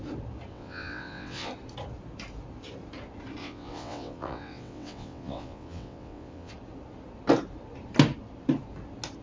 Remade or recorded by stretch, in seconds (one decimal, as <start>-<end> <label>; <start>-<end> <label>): 0.0-0.5 recorded; 0.5-1.5 remade; 1.5-3.4 recorded; 3.4-6.5 remade; 6.5-9.2 recorded